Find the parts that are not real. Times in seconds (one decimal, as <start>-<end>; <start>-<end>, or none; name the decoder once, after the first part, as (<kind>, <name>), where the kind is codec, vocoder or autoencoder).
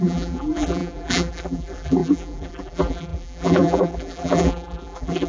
0.0-5.3 (vocoder, BigVGAN v2)